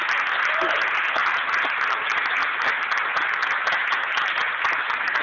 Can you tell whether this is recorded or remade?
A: recorded